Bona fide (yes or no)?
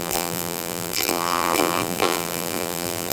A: no